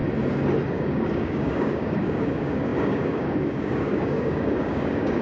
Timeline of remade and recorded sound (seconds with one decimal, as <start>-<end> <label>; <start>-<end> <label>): 0.0-0.7 recorded; 0.7-5.2 remade